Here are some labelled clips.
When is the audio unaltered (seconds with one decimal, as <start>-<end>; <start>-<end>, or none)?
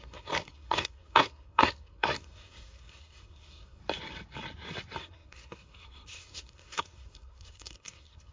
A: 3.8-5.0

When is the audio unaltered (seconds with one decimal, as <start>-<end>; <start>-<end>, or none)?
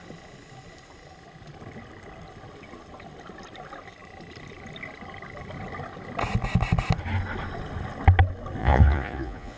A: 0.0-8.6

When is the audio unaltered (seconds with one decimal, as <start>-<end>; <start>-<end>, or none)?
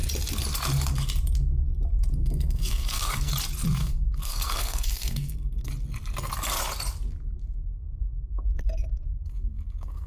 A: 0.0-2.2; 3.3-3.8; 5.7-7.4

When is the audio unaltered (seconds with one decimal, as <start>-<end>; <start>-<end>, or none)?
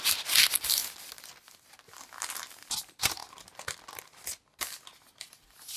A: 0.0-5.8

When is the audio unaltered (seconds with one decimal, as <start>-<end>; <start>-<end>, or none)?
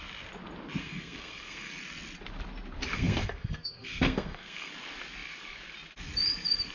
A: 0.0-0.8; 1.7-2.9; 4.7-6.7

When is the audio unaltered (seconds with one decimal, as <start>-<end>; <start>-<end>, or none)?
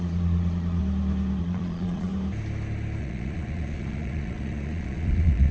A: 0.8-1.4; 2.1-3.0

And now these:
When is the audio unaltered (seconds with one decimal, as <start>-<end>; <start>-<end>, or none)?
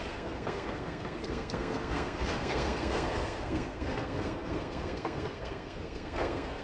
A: none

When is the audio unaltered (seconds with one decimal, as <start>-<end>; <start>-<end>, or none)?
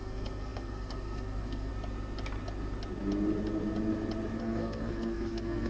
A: 1.7-4.4